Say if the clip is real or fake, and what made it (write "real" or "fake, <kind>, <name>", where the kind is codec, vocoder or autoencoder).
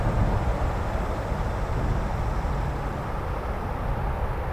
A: real